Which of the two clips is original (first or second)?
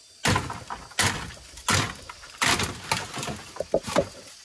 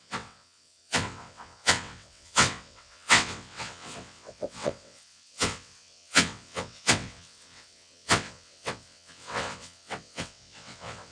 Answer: first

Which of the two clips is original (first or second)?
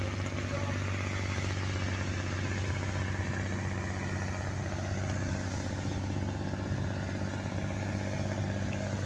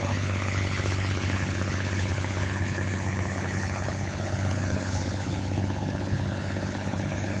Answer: first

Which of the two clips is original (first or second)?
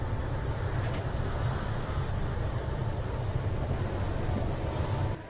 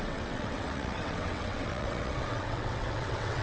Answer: first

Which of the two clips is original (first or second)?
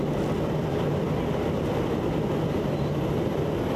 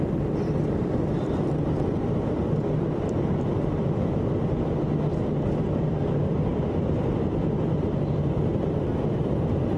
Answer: first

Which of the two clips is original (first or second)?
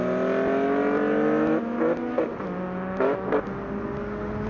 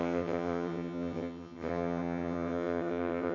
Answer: first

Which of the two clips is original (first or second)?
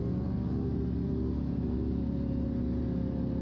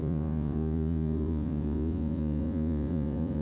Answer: first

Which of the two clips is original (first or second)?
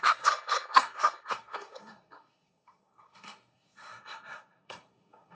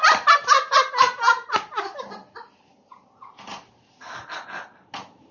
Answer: second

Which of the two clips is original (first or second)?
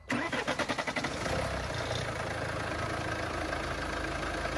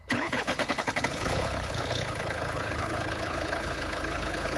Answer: first